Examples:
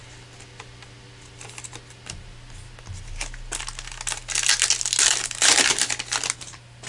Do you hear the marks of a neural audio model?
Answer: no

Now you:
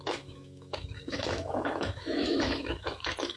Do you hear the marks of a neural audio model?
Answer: yes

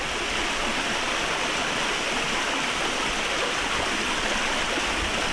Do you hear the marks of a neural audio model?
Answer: no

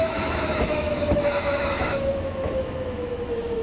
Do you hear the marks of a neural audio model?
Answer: yes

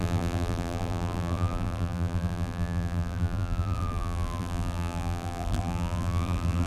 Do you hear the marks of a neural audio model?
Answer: yes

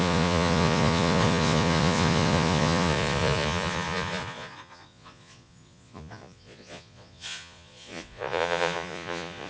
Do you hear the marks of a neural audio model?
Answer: yes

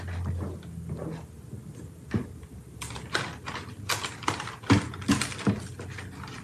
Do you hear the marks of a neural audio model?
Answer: no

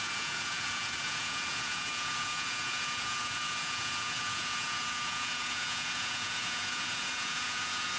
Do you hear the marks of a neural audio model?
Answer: yes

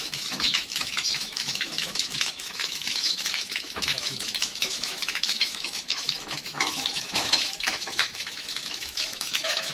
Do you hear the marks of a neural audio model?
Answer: yes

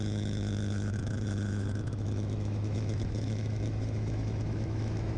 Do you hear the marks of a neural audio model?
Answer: yes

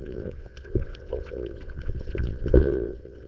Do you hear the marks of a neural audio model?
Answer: yes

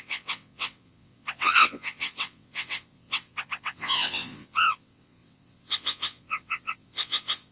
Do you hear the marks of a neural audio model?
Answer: yes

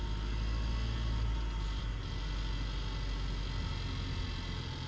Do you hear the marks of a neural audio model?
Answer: no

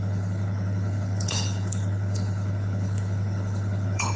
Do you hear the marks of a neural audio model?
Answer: yes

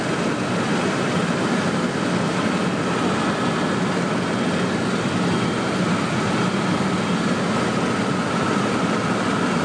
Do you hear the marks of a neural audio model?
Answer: no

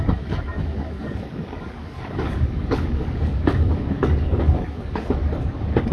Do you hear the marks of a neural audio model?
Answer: yes